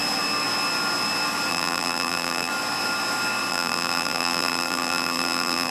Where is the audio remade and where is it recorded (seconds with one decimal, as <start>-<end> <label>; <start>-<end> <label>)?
0.0-1.5 recorded; 1.5-2.5 remade; 2.5-3.5 recorded; 3.5-5.7 remade